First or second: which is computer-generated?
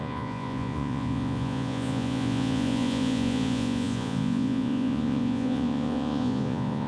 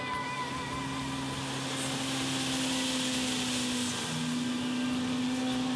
first